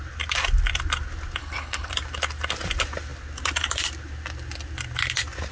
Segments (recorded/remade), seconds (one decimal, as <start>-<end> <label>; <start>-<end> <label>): 0.0-1.4 recorded; 1.4-1.9 remade; 1.9-5.5 recorded